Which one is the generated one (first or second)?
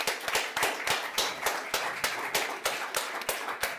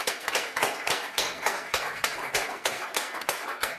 second